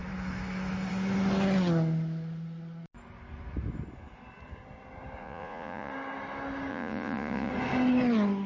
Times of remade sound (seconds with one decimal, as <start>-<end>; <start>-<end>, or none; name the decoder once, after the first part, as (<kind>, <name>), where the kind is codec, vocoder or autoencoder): 5.2-5.9 (vocoder, Vocos); 6.7-7.5